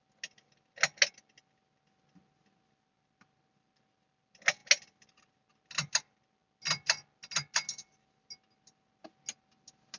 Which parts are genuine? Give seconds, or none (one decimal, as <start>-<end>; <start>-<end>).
0.0-10.0